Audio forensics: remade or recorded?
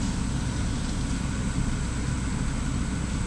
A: recorded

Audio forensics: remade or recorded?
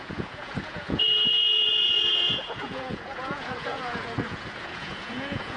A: remade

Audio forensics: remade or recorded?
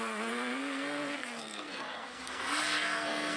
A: remade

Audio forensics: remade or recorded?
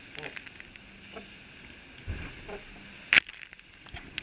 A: recorded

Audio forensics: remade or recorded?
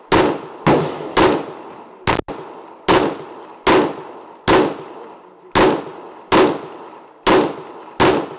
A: recorded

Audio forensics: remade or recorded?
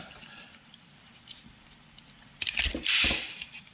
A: recorded